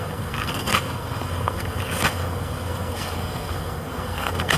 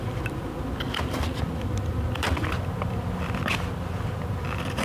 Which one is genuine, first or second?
second